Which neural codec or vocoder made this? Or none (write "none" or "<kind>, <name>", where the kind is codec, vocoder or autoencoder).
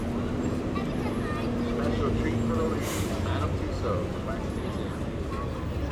none